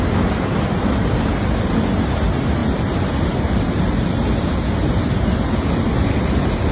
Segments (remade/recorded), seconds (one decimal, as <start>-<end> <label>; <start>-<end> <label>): 0.0-6.7 recorded